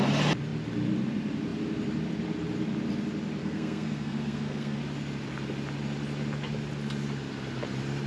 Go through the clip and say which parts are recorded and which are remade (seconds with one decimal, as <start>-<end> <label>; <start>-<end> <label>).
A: 0.0-3.4 recorded; 3.4-4.8 remade; 4.8-8.1 recorded